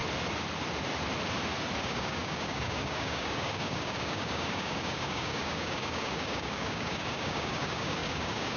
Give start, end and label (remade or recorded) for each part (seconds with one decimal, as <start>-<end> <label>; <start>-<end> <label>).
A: 0.0-1.8 recorded; 1.8-8.6 remade